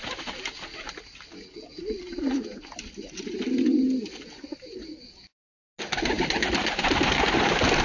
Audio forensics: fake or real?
real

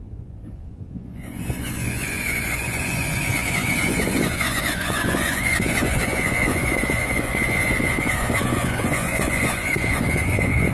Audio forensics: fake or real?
fake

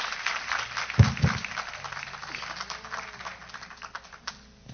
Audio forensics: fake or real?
real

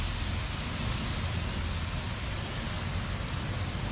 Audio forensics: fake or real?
real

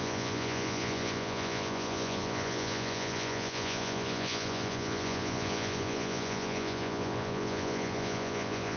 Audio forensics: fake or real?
fake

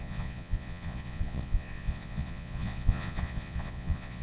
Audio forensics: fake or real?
fake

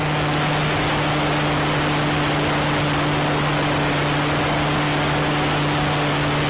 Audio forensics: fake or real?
real